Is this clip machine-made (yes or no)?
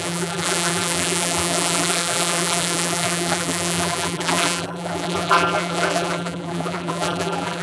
yes